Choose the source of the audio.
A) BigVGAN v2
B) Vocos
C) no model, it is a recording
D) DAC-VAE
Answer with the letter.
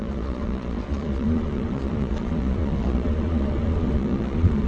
B